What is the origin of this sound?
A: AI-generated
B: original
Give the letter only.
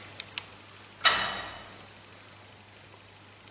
B